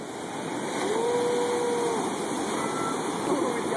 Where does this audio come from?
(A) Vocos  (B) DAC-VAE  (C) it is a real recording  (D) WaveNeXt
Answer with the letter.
C